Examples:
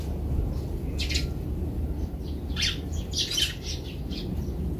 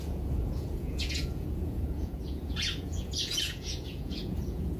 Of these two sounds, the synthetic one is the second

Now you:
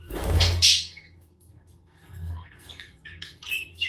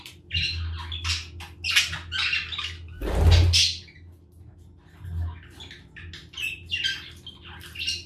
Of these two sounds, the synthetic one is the first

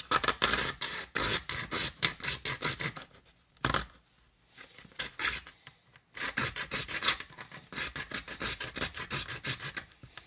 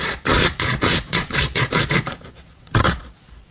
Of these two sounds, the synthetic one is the second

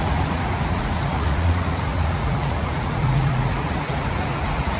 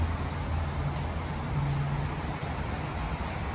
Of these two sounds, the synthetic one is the first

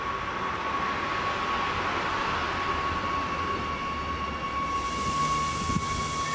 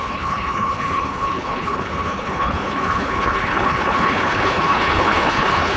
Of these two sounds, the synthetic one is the second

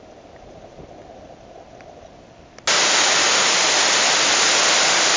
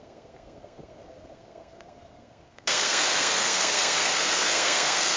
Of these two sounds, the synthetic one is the second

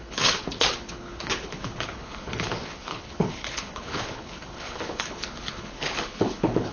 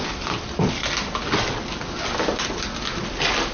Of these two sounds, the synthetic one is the first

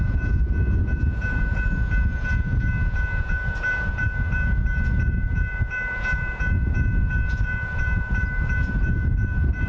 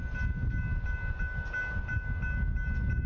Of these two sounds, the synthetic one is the first